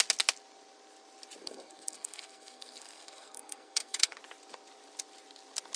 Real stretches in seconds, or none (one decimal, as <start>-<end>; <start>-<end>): 0.0-1.4; 4.2-5.8

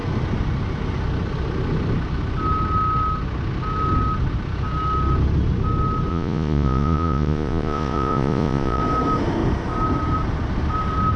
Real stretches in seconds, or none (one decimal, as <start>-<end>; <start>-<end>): 0.0-6.1; 8.8-11.2

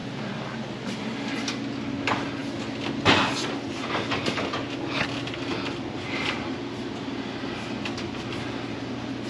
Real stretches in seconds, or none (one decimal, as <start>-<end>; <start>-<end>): 0.0-9.3

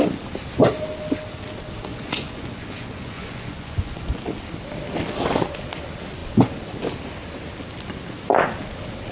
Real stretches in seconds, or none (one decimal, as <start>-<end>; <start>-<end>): 0.0-1.9; 4.2-9.1